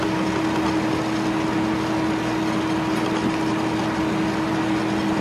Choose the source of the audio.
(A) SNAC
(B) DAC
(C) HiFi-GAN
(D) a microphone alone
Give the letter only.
D